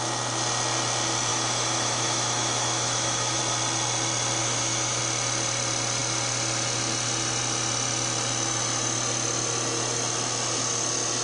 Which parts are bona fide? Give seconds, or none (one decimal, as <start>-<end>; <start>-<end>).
0.0-1.3; 3.4-4.4; 5.0-11.2